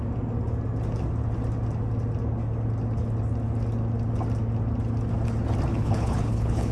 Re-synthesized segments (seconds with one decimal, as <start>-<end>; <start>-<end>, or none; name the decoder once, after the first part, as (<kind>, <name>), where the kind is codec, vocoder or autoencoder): 5.7-6.7 (codec, HILCodec)